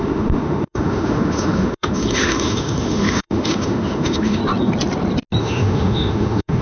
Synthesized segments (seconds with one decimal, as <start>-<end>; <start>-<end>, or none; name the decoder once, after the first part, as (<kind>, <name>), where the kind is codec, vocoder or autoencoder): 0.0-4.4 (autoencoder, DAC-VAE); 5.4-6.6